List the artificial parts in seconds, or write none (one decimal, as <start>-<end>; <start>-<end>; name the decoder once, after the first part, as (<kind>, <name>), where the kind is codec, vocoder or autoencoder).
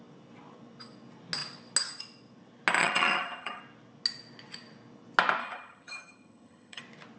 2.8-3.6 (vocoder, HiFi-GAN); 5.4-6.8